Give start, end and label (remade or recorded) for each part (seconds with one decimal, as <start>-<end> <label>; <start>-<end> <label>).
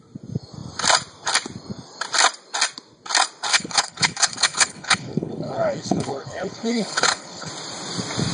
0.0-3.5 recorded; 3.5-7.5 remade; 7.5-8.3 recorded